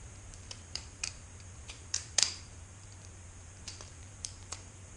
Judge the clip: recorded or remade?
remade